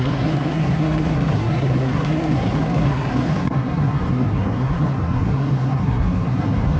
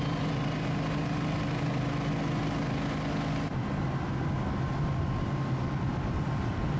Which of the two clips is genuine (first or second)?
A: second